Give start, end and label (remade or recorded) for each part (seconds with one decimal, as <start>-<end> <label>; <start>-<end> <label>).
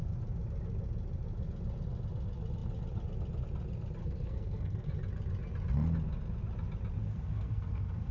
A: 0.0-4.0 recorded; 4.0-4.9 remade; 4.9-7.0 recorded; 7.0-8.1 remade